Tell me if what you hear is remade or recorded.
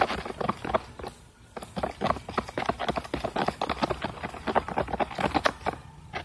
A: recorded